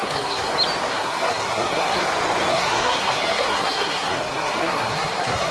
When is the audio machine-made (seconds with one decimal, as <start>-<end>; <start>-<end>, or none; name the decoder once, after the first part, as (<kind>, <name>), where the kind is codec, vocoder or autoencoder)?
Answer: 0.0-0.5 (codec, SNAC); 0.9-2.1; 2.5-5.5